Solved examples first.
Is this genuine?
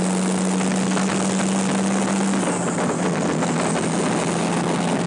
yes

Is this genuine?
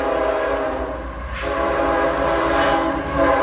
yes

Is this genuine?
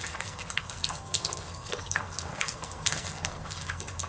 no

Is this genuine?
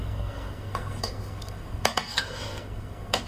no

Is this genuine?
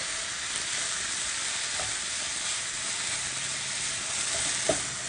yes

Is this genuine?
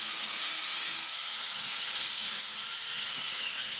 no